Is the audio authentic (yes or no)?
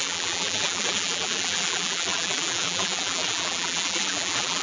no